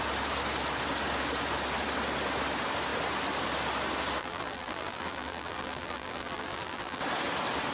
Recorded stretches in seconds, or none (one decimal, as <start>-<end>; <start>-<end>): 0.0-4.2; 7.0-7.7